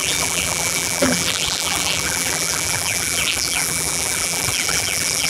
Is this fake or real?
fake